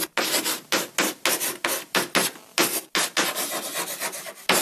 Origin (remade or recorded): recorded